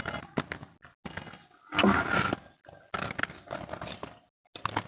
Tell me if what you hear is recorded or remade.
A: recorded